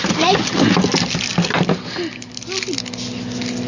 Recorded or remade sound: recorded